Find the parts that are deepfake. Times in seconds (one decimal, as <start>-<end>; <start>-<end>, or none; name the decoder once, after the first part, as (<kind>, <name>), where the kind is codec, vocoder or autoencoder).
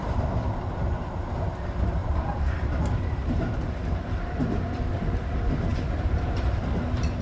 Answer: 2.0-4.9 (vocoder, BigVGAN v2); 5.7-6.6